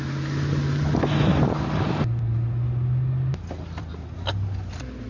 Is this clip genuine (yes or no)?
yes